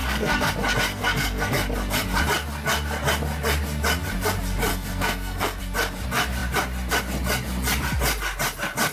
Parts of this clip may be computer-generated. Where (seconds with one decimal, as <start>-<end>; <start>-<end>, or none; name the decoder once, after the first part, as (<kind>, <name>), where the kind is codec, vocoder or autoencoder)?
0.0-0.5 (codec, SNAC); 0.9-1.5; 4.7-5.6